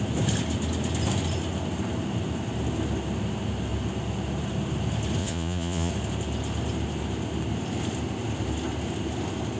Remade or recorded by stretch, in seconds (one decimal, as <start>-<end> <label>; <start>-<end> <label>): 0.0-5.2 recorded; 5.2-5.9 remade; 5.9-9.6 recorded